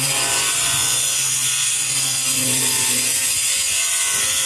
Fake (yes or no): yes